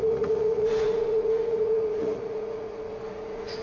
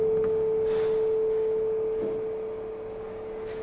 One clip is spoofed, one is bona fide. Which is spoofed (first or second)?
first